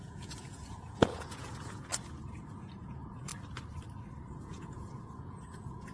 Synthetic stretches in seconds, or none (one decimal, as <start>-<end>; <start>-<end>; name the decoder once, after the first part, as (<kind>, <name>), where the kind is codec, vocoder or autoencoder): 0.0-1.9 (vocoder, Vocos); 2.5-3.3; 4.3-5.9